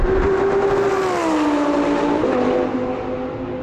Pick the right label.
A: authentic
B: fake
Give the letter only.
A